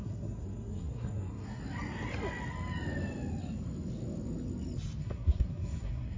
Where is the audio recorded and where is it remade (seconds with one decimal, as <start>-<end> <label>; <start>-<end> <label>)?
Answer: 0.0-1.6 remade; 1.6-5.0 recorded; 5.0-6.2 remade